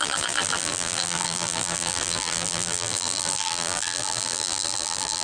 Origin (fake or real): fake